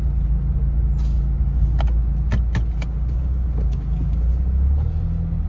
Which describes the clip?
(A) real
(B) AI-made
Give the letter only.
A